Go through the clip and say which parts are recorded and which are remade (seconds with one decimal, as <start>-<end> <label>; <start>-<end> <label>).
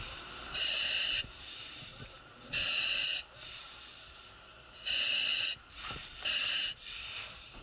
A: 0.0-1.9 remade; 1.9-3.2 recorded; 3.2-7.6 remade